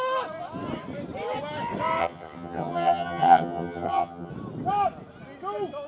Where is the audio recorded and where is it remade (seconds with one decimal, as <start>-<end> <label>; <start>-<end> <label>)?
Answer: 0.0-2.0 recorded; 2.0-4.3 remade; 4.3-5.9 recorded